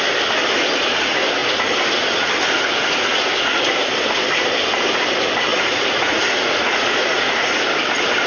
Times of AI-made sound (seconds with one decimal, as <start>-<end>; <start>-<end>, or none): 5.5-7.6